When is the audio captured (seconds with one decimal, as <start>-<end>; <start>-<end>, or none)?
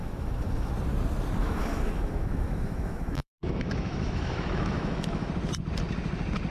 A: 0.7-1.4; 5.3-6.5